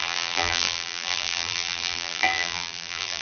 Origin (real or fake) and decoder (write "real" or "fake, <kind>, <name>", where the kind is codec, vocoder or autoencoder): fake, vocoder, BigVGAN v2